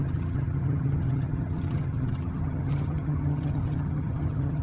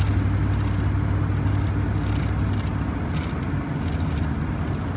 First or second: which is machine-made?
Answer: first